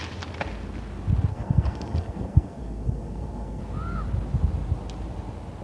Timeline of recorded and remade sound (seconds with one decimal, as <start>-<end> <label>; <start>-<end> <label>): 0.0-1.3 recorded; 1.3-3.6 remade; 3.6-5.6 recorded